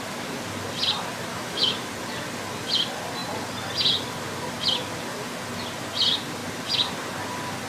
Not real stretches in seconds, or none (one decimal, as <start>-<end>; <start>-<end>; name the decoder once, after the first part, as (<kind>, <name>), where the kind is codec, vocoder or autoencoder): 1.3-1.9 (autoencoder, DAC-VAE)